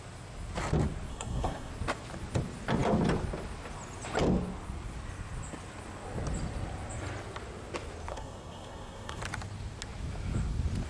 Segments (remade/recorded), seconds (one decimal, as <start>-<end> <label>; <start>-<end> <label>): 0.0-1.1 recorded; 1.1-1.7 remade; 1.7-8.1 recorded; 8.1-9.2 remade; 9.2-10.9 recorded